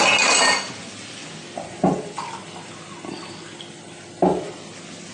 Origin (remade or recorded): recorded